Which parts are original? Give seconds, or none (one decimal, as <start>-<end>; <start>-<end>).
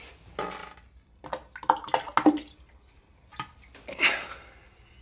0.0-5.0